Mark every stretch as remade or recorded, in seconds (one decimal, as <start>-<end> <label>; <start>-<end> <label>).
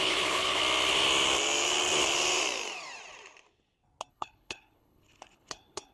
0.0-0.6 remade; 0.6-4.1 recorded; 4.1-5.9 remade